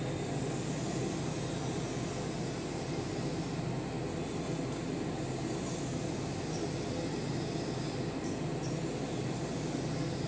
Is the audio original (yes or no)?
yes